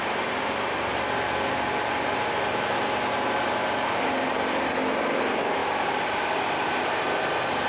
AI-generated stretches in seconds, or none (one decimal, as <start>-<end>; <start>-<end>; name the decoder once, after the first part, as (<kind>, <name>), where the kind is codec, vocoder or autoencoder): none